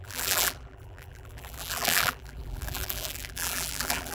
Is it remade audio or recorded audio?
remade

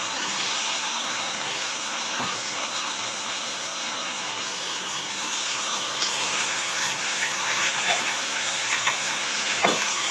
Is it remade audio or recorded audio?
remade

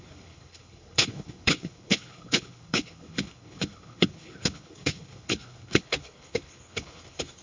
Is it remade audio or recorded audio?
remade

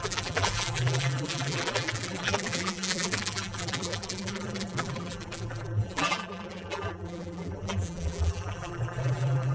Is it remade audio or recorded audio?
remade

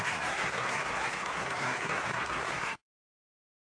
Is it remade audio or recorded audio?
remade